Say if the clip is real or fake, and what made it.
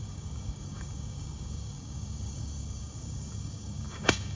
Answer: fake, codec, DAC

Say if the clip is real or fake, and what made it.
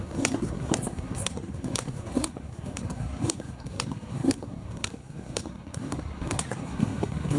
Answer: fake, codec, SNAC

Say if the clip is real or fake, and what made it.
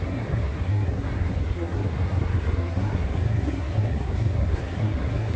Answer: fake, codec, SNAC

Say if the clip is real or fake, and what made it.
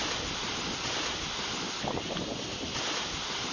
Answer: real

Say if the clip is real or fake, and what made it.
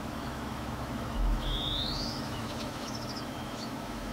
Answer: fake, autoencoder, DAC-VAE